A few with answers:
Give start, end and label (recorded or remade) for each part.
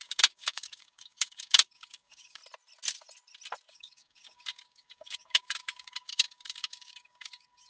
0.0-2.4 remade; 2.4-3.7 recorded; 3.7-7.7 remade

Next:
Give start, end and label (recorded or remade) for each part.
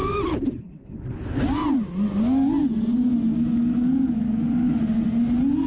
0.0-5.7 recorded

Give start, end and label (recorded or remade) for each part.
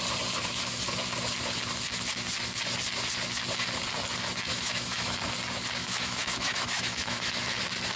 0.0-4.5 recorded; 4.5-5.2 remade; 5.2-5.8 recorded; 5.8-7.6 remade; 7.6-8.0 recorded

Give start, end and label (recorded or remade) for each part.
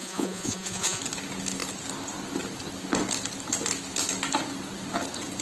0.0-1.0 remade; 1.0-5.4 recorded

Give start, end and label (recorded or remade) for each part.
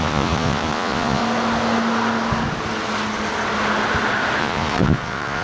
0.0-1.2 remade; 1.2-4.4 recorded; 4.4-5.4 remade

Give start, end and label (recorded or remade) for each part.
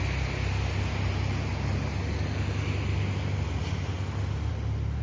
0.0-5.0 recorded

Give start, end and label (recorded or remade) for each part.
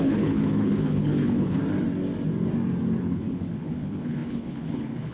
0.0-1.6 remade; 1.6-3.0 recorded; 3.0-5.1 remade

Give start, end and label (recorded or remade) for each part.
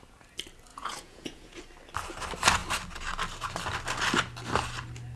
0.0-0.7 recorded; 0.7-1.6 remade; 1.6-5.2 recorded